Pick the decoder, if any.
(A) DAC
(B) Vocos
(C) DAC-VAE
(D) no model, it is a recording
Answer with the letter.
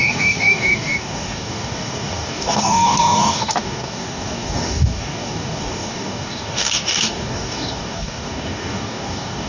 A